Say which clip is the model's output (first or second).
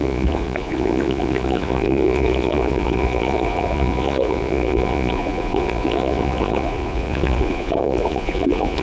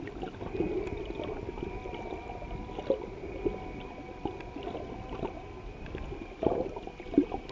first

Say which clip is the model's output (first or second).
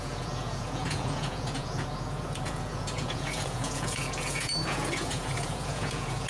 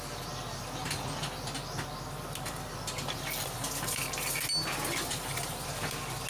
first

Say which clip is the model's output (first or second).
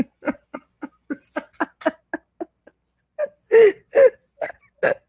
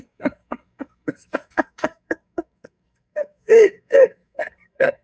second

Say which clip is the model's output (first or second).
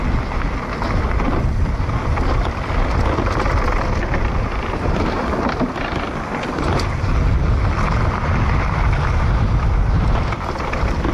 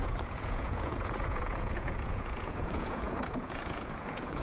second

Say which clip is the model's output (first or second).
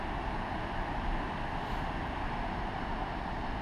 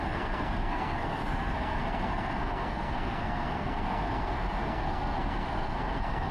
second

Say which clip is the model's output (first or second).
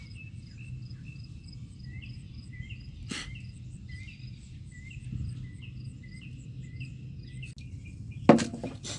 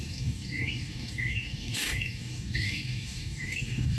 second